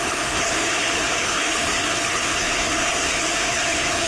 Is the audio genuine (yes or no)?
no